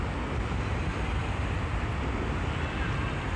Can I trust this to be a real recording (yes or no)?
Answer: yes